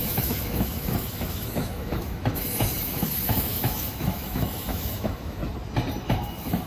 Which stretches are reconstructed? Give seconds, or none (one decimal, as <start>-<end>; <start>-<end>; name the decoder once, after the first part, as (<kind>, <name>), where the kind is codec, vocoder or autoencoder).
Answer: 0.0-5.4 (autoencoder, DAC-VAE); 6.0-6.7